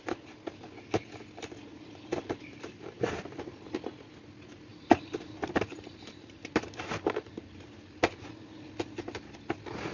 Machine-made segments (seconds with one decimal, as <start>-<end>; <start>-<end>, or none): 1.7-3.1; 4.7-7.4